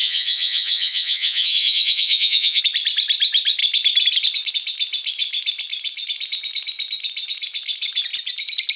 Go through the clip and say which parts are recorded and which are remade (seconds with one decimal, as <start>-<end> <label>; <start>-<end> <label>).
0.0-2.6 remade; 2.6-8.8 recorded

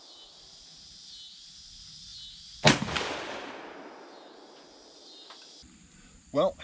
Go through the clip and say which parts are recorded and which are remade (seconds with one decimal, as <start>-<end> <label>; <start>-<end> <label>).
0.0-6.6 recorded